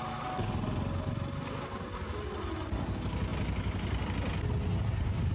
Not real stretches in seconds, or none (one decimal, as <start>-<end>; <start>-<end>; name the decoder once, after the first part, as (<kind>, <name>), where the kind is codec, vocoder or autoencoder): none